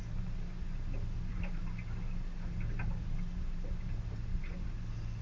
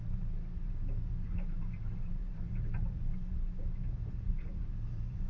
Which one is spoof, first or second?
second